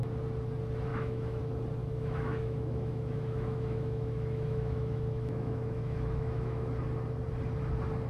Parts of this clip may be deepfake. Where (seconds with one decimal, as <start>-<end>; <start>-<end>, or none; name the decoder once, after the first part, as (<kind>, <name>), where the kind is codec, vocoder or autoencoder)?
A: 0.9-1.4 (autoencoder, DAC-VAE); 1.8-6.7